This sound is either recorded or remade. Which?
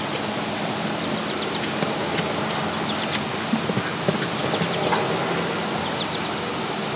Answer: recorded